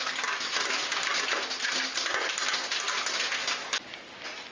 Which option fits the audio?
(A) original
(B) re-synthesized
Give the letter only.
A